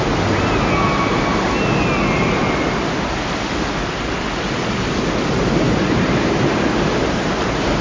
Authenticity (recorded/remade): recorded